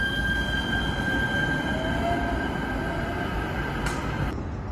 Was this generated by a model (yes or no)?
no